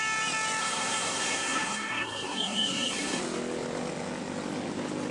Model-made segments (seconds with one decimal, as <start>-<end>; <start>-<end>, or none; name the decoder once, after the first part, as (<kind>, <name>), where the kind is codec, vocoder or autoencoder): 0.6-3.2 (codec, SNAC)